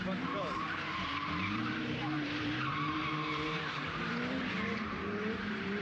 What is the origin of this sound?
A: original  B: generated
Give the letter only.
B